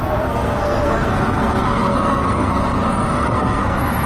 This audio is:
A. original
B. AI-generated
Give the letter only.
B